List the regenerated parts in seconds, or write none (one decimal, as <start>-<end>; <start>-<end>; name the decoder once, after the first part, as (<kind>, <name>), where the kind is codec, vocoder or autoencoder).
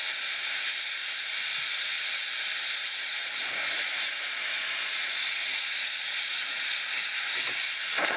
3.6-6.8 (vocoder, Vocos)